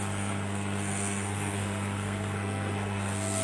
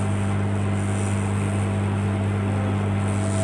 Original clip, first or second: second